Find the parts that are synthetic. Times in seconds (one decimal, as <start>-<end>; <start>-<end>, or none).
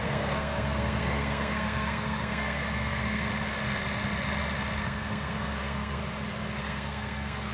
0.0-3.3; 4.8-6.0; 6.6-7.5